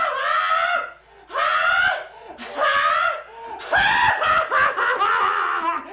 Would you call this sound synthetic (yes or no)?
no